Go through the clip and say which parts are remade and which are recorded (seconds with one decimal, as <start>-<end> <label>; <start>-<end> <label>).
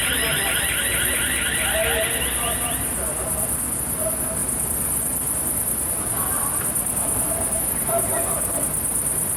0.0-9.4 recorded